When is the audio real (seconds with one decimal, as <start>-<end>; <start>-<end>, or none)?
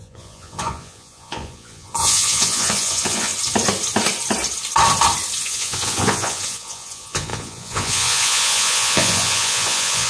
3.3-5.4